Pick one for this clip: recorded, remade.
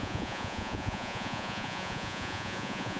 remade